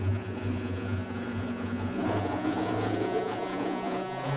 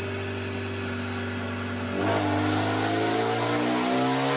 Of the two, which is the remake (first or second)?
first